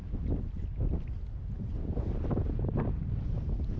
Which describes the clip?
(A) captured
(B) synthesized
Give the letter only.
A